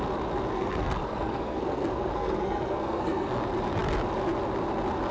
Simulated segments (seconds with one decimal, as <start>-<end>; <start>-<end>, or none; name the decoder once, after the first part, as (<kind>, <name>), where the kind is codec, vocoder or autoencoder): 0.5-3.4 (codec, SNAC)